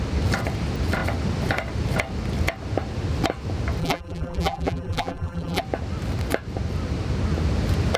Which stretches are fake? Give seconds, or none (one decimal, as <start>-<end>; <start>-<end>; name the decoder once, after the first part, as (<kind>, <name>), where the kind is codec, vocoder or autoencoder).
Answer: 3.8-5.6 (vocoder, BigVGAN v2)